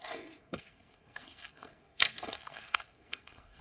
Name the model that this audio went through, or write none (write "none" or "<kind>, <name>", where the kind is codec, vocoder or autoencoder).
codec, SNAC